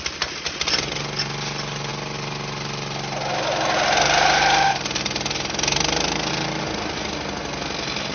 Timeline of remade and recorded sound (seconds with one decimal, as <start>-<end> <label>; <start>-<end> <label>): 0.0-8.1 recorded